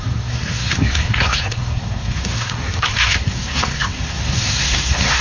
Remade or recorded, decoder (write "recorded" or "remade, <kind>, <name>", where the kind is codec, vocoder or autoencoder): remade, codec, SNAC